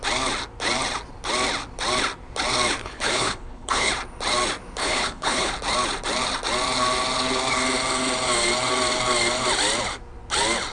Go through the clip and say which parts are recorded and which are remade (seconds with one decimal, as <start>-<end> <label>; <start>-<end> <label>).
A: 0.0-2.8 recorded; 2.8-3.9 remade; 3.9-4.8 recorded; 4.8-5.5 remade; 5.5-10.7 recorded